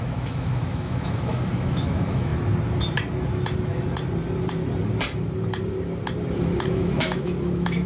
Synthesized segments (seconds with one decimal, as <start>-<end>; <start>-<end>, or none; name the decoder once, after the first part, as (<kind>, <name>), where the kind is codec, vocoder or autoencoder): 0.0-2.3 (autoencoder, DAC-VAE); 6.7-7.9